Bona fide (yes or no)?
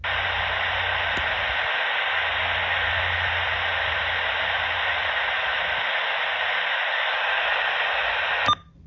yes